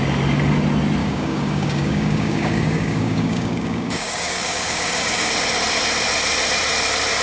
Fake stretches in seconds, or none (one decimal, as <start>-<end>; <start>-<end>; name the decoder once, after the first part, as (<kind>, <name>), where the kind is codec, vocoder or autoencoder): 1.0-5.3 (codec, DAC)